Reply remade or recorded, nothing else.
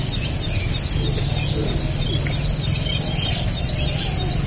recorded